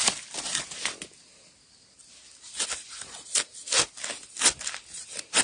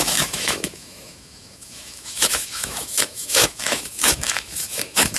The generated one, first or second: second